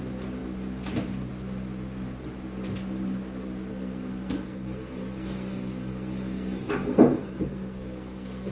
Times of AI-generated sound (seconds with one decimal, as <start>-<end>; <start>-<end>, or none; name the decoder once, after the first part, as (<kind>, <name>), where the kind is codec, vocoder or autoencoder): 3.7-8.5 (codec, SNAC)